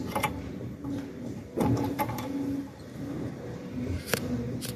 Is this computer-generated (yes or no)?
yes